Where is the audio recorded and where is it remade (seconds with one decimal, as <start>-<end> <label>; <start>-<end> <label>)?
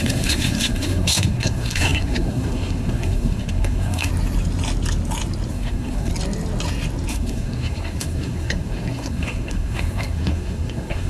0.0-4.1 remade; 4.1-5.5 recorded; 5.5-6.1 remade; 6.1-7.1 recorded; 7.1-11.1 remade